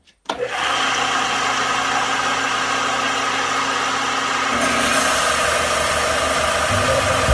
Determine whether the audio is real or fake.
real